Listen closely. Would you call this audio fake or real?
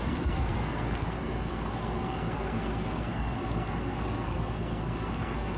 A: fake